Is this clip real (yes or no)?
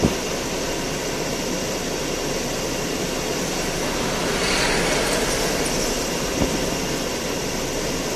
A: yes